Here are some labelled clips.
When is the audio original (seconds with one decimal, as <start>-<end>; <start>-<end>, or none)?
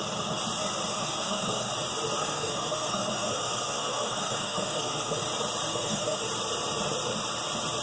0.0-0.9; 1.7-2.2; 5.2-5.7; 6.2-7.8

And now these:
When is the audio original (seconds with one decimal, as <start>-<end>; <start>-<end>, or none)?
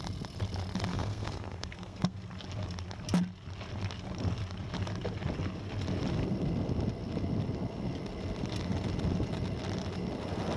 0.0-0.9; 2.2-10.6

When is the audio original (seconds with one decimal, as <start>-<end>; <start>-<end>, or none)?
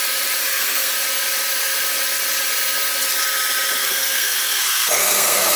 0.0-0.4; 0.9-3.8